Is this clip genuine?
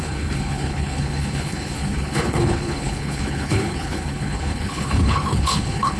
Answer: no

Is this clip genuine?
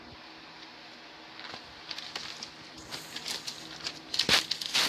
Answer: yes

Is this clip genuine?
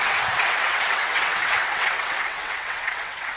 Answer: no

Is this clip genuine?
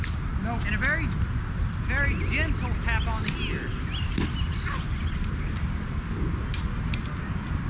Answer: yes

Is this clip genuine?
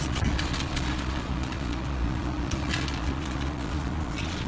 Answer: no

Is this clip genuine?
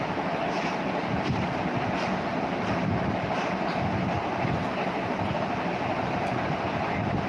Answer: yes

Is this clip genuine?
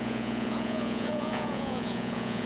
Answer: no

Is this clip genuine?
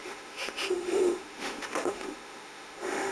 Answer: no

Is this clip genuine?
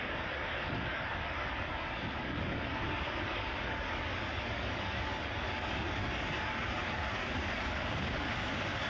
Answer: no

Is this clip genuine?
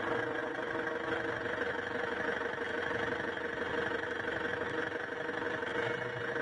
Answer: yes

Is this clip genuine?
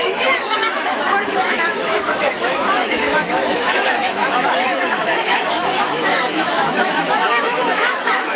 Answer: no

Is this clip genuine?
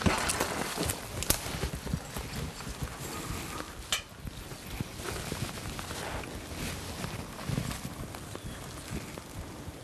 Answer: yes